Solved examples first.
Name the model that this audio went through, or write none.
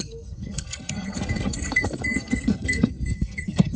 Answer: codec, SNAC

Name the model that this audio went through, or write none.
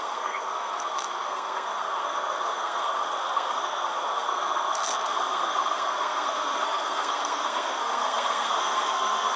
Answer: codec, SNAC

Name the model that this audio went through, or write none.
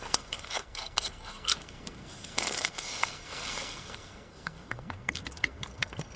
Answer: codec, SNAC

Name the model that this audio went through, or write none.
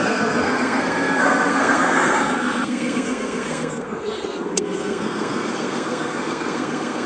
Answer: codec, SNAC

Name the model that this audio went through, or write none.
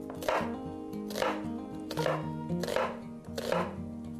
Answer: none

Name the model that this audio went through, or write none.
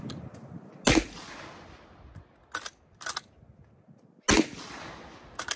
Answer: none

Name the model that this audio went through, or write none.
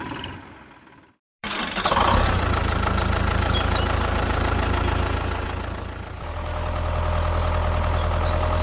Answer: none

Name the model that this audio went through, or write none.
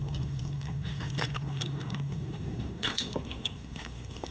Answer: codec, SNAC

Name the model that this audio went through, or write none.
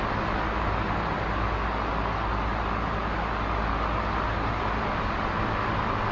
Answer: none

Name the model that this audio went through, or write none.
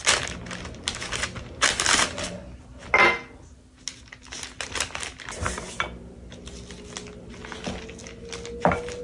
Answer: none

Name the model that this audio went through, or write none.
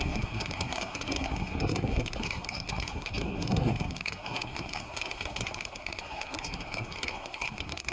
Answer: codec, SNAC